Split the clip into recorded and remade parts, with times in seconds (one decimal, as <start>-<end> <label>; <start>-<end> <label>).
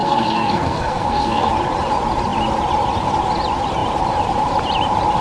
0.0-1.5 remade; 1.5-5.2 recorded